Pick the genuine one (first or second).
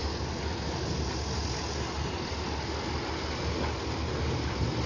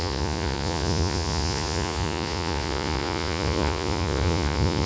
first